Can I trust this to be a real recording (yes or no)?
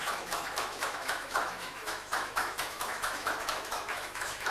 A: no